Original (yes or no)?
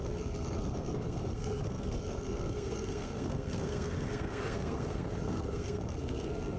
no